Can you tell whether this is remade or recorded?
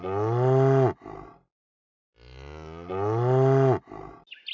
recorded